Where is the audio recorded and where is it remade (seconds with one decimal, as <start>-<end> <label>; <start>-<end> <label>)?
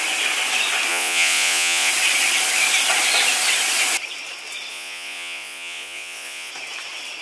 0.0-0.9 recorded; 0.9-1.9 remade; 1.9-4.7 recorded; 4.7-6.5 remade; 6.5-7.2 recorded